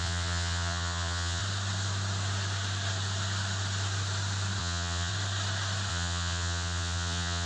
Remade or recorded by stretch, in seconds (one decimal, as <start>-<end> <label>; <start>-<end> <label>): 0.0-1.4 remade; 1.4-4.6 recorded; 4.6-5.1 remade; 5.1-5.9 recorded; 5.9-7.5 remade